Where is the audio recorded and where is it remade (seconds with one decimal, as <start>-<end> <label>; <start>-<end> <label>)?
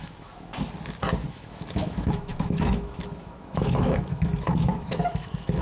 0.0-0.5 remade; 0.5-1.3 recorded; 1.3-5.6 remade